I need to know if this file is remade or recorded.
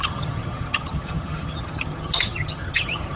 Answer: remade